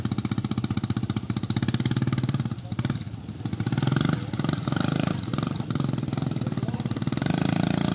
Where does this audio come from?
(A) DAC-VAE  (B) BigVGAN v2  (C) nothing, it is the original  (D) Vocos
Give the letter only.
B